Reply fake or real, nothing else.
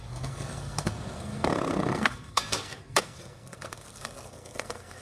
fake